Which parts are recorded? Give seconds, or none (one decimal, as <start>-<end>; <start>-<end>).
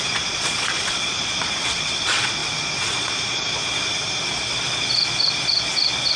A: 3.6-6.2